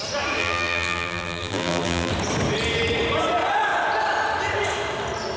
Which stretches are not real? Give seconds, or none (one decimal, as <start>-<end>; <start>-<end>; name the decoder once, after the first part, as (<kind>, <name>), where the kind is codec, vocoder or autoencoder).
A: 0.4-2.1 (vocoder, BigVGAN v2)